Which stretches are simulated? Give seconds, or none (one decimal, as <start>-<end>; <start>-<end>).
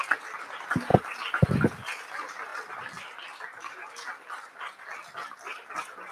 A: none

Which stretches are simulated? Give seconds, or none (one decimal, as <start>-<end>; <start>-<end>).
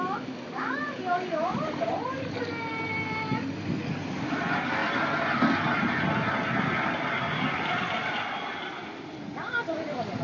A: none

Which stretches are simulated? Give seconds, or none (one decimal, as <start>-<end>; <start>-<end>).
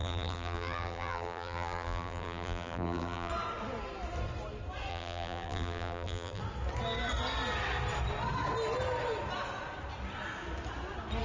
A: 0.0-3.3; 4.9-6.4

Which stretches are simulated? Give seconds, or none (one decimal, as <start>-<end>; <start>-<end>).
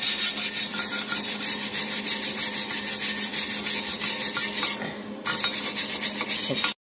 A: 0.7-1.8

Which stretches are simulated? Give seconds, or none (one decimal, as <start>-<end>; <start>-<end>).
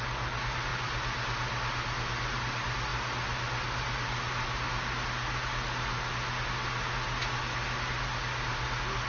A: 0.7-2.4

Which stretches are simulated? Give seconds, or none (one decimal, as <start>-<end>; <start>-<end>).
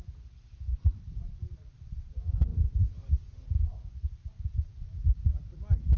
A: 0.4-2.1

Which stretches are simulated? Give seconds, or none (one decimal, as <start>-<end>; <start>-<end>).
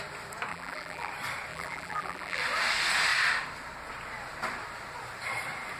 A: 0.5-1.1; 1.5-2.4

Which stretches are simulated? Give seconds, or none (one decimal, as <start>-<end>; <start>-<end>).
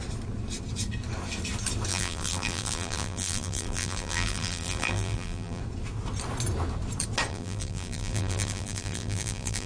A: 1.9-5.6; 7.3-9.7